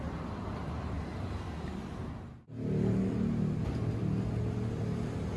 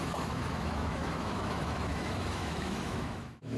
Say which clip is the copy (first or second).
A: second